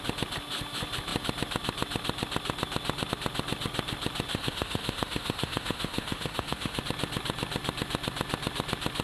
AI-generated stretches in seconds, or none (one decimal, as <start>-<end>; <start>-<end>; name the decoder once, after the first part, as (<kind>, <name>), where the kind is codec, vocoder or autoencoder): 4.3-6.8 (autoencoder, DAC-VAE)